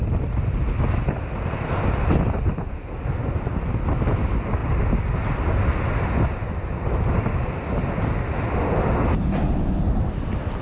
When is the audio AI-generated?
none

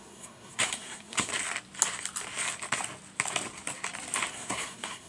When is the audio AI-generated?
0.0-1.3 (codec, SNAC); 4.3-5.1

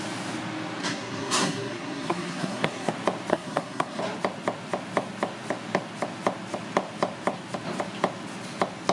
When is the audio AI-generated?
0.8-2.9 (codec, SNAC); 3.3-4.0

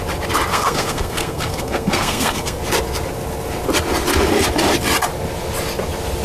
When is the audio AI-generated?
0.5-2.6 (codec, SNAC)

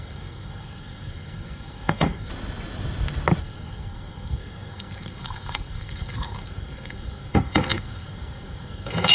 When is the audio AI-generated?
0.0-2.3 (codec, SNAC); 3.4-9.1

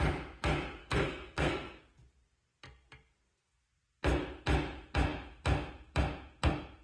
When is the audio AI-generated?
0.8-1.8 (codec, SNAC)

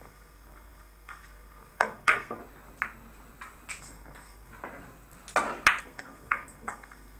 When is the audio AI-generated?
0.0-2.4 (codec, SNAC); 3.8-4.5; 5.8-7.2